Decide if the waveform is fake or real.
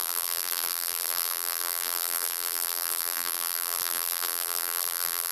fake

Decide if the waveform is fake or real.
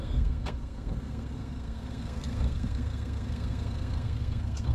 fake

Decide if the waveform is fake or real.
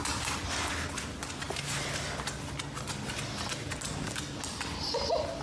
real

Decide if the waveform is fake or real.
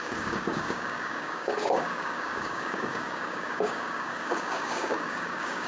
fake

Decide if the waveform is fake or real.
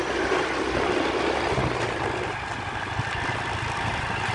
real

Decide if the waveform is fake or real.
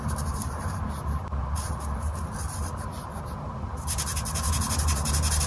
fake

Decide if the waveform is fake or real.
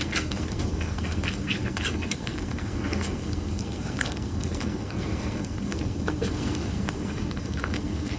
fake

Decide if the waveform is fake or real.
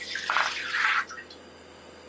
real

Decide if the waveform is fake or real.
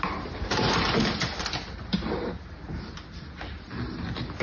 real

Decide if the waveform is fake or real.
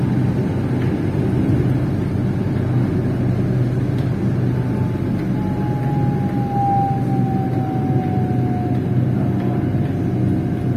real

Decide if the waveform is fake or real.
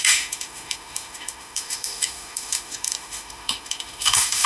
fake